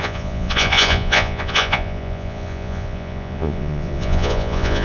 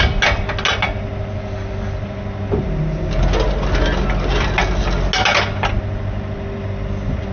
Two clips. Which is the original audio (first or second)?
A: second